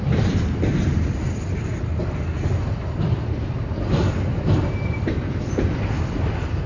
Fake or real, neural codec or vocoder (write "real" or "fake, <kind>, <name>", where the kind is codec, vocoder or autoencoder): real